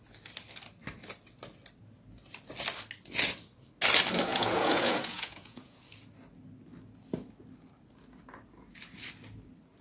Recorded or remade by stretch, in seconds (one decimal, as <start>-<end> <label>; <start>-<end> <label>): 0.0-4.3 recorded; 4.3-5.8 remade; 5.8-9.8 recorded